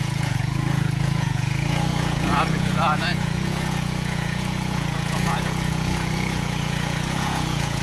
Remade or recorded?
remade